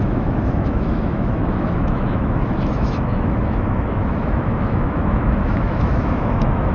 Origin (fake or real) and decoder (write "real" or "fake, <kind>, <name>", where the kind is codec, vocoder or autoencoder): fake, autoencoder, DAC-VAE